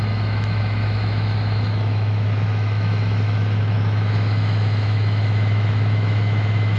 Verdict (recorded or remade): remade